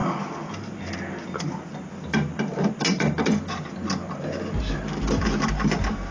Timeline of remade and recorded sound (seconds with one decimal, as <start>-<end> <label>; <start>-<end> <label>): 0.0-6.1 recorded

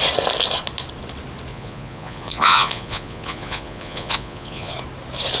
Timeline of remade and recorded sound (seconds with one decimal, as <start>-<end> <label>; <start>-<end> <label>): 0.0-1.5 recorded; 1.5-4.7 remade; 4.7-5.4 recorded

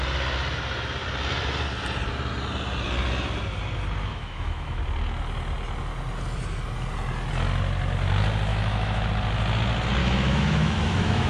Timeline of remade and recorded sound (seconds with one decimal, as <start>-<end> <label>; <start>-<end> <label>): 0.0-4.1 recorded; 4.1-4.8 remade; 4.8-8.5 recorded; 8.5-9.1 remade; 9.1-10.0 recorded; 10.0-11.3 remade